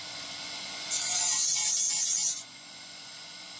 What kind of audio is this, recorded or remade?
remade